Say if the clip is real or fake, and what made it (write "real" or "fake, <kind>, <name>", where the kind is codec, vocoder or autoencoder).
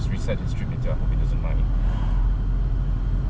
real